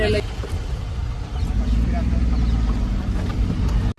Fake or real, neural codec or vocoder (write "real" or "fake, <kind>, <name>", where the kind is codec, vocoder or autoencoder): real